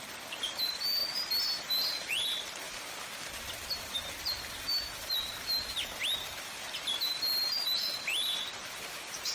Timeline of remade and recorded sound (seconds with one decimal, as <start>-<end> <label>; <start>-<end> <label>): 0.0-1.0 remade; 1.0-1.9 recorded; 1.9-9.3 remade